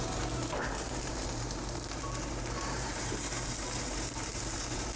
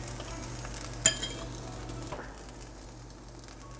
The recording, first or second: second